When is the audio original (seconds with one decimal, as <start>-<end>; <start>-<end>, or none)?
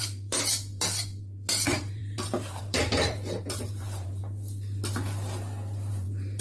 4.2-5.9